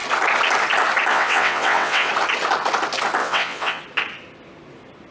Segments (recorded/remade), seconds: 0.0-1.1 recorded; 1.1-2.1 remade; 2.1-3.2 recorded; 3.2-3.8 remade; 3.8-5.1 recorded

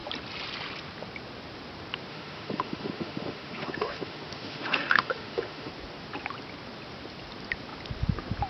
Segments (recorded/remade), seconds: 0.0-2.1 recorded; 2.1-5.7 remade; 5.7-8.5 recorded